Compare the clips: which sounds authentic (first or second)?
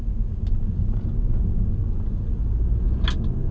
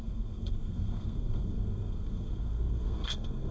first